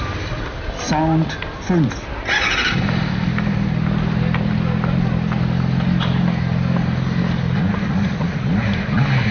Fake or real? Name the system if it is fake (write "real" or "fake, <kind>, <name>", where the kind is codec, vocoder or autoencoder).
real